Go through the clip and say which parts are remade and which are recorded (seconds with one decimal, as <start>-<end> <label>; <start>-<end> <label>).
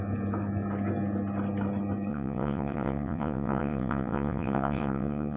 0.0-2.1 recorded; 2.1-5.4 remade